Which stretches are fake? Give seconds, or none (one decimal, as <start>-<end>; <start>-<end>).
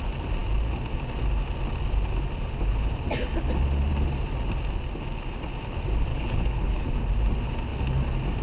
6.1-6.9